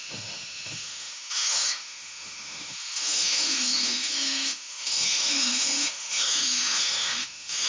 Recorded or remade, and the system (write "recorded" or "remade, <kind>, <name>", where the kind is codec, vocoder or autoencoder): remade, autoencoder, DAC-VAE